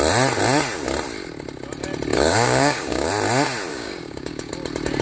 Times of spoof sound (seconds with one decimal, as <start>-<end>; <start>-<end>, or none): 2.1-3.1; 3.7-4.5